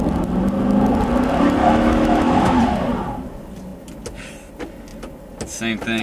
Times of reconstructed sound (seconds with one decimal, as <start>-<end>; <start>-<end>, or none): 1.6-2.6